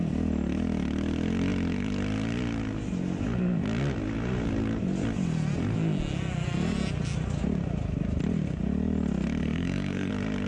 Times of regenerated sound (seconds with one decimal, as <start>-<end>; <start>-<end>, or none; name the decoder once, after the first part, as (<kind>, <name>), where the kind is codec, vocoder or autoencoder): 9.4-10.1 (codec, SNAC)